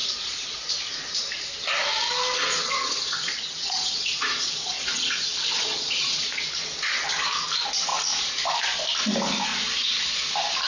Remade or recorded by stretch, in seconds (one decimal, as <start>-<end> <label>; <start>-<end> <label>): 0.0-0.7 remade; 0.7-2.5 recorded; 2.5-6.4 remade; 6.4-9.5 recorded; 9.5-10.1 remade; 10.1-10.7 recorded